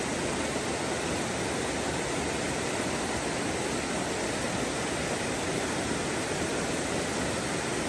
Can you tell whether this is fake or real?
real